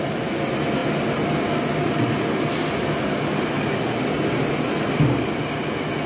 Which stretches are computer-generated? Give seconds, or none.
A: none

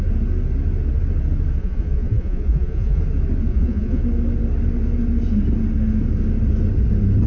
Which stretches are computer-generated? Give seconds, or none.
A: 1.6-3.0 (vocoder, Vocos); 3.5-4.0

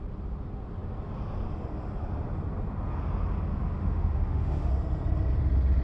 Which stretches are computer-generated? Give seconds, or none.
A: 3.8-4.7 (autoencoder, DAC-VAE)

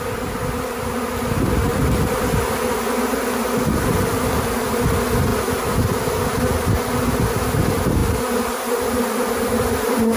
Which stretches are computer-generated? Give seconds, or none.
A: none

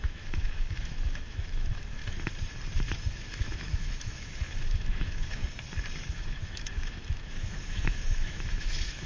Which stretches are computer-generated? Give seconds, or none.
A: 0.0-2.0 (autoencoder, DAC-VAE); 2.9-5.4; 6.1-9.1

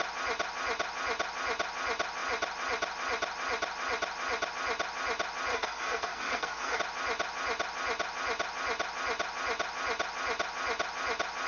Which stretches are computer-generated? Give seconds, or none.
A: 5.5-6.8 (codec, SNAC)

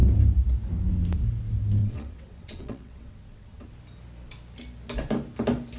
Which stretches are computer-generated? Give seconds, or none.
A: 1.8-3.7 (vocoder, WaveNeXt)